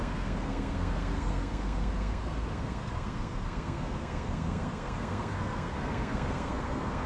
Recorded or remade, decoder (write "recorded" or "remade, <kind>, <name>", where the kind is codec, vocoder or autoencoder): remade, codec, SNAC